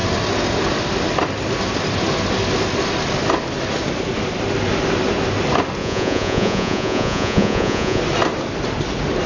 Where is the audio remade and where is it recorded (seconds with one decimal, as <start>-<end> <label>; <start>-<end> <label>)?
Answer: 0.0-5.8 recorded; 5.8-8.0 remade; 8.0-9.3 recorded